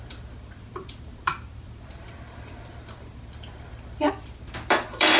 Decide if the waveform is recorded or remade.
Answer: remade